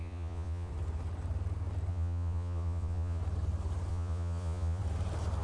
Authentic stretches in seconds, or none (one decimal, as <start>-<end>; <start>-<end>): 0.7-1.9; 3.2-3.9; 4.8-5.4